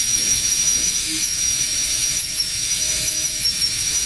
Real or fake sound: fake